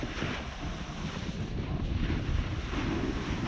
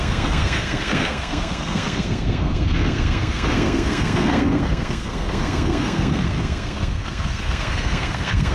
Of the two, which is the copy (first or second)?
second